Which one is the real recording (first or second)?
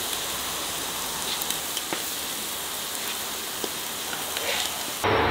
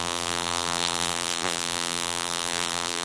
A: first